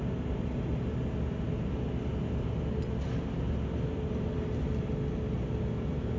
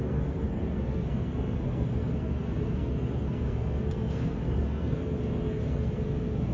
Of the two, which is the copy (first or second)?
second